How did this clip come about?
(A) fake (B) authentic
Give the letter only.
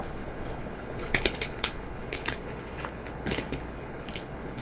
A